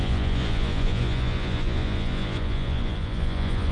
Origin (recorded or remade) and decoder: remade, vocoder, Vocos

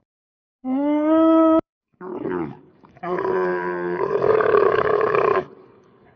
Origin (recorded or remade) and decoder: remade, codec, DAC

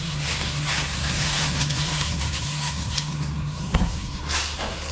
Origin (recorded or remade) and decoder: remade, codec, SNAC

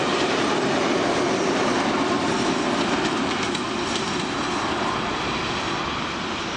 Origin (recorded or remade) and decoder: recorded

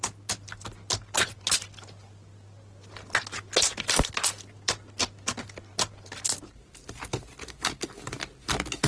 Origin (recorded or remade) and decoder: recorded